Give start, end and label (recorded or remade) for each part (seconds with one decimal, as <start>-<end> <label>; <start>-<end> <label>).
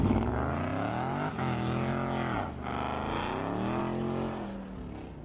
0.0-5.2 recorded